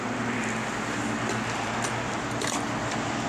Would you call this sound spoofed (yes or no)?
no